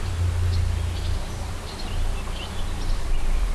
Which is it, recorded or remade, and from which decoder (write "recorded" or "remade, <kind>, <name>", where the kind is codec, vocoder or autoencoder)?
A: recorded